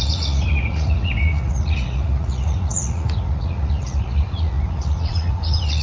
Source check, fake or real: fake